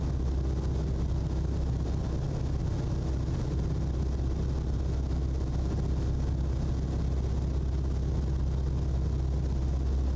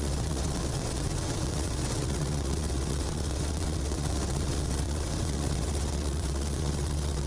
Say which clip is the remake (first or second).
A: second